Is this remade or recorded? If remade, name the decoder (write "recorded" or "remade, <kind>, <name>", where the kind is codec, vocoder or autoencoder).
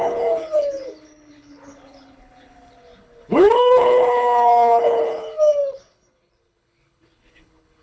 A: remade, codec, HILCodec